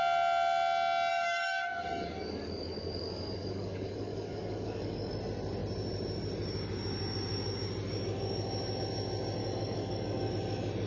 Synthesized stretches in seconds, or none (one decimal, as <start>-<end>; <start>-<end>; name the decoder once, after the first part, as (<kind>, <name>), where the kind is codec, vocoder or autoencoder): 1.1-5.1 (codec, DAC); 9.4-10.3